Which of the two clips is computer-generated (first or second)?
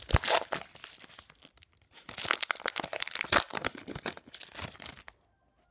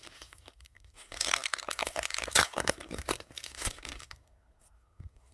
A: second